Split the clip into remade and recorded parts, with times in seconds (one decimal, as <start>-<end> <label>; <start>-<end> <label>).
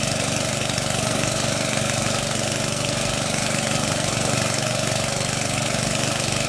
0.0-6.5 remade